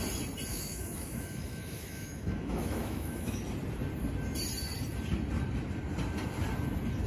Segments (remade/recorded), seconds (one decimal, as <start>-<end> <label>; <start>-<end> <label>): 0.0-0.5 recorded; 0.5-3.4 remade; 3.4-7.1 recorded

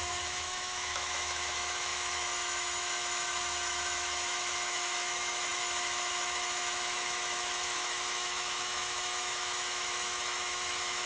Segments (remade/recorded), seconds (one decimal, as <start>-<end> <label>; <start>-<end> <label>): 0.0-11.1 remade

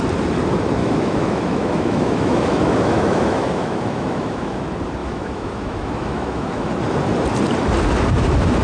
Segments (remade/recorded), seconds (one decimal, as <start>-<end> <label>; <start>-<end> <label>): 0.0-0.8 recorded; 0.8-4.6 remade; 4.6-5.0 recorded; 5.0-6.7 remade; 6.7-8.6 recorded

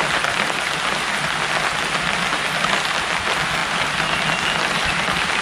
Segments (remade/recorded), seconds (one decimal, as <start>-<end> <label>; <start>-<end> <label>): 0.0-5.4 recorded

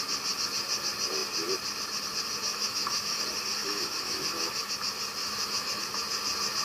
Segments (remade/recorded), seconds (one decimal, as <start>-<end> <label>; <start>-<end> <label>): 0.0-2.5 recorded; 2.5-3.2 remade; 3.2-3.6 recorded; 3.6-4.7 remade; 4.7-5.2 recorded; 5.2-5.8 remade; 5.8-6.6 recorded

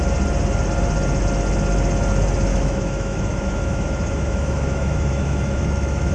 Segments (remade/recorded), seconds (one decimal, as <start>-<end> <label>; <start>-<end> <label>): 0.0-2.5 recorded; 2.5-6.1 remade